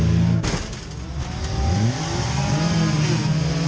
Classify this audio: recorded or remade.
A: recorded